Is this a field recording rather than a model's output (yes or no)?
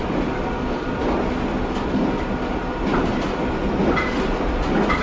yes